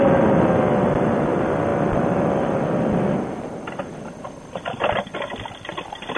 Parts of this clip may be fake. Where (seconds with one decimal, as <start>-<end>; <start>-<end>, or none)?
none